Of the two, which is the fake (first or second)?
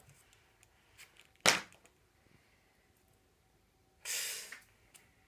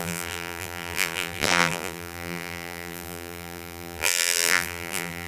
second